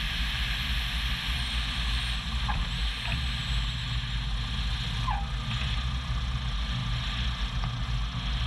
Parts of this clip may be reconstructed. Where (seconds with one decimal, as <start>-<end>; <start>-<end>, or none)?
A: none